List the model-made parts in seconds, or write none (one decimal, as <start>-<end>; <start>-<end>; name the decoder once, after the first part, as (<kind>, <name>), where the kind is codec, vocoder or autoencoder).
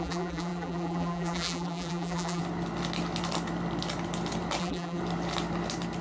0.0-2.4 (vocoder, BigVGAN v2); 4.6-5.0